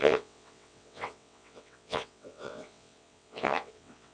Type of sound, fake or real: fake